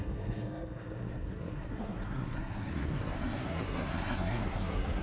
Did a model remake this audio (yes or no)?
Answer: yes